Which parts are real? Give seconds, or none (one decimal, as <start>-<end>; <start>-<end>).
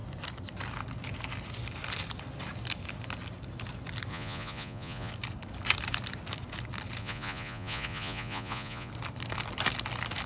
0.0-4.1; 5.1-7.0; 8.9-10.3